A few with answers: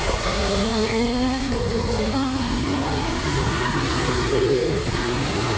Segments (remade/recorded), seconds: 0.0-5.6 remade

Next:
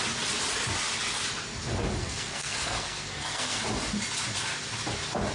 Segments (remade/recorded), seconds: 0.0-2.0 recorded; 2.0-3.6 remade; 3.6-5.3 recorded